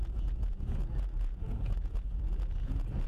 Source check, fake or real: fake